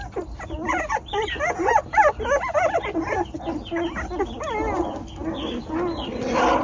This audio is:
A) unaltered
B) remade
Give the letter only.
A